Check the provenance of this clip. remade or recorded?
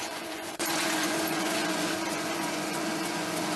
remade